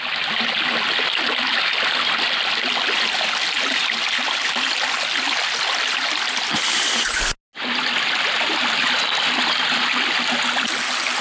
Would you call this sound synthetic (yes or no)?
no